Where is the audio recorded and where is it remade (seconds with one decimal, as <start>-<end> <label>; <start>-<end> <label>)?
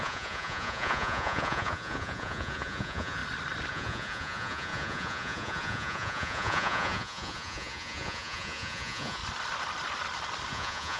0.0-3.2 remade; 3.2-3.7 recorded; 3.7-9.2 remade; 9.2-10.5 recorded; 10.5-11.0 remade